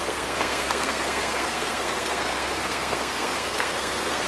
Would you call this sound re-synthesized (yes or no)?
yes